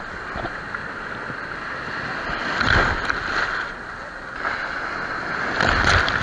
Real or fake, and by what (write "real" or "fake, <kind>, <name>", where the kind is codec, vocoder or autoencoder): real